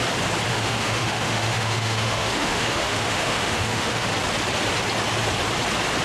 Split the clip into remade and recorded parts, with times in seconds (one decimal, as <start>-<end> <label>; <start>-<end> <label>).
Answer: 0.0-0.5 recorded; 0.5-4.1 remade; 4.1-6.0 recorded